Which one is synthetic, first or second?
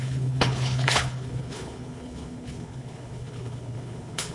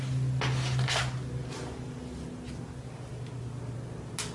first